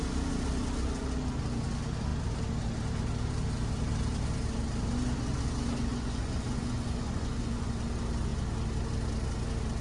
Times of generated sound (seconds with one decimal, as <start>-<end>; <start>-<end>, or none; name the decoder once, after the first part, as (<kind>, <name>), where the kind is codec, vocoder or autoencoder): 5.9-7.7 (vocoder, Vocos)